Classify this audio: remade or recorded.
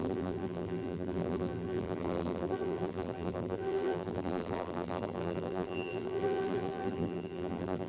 remade